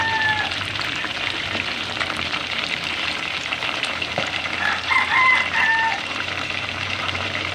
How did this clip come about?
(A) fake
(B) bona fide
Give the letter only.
A